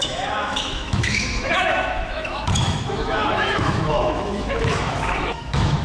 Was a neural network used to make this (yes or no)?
yes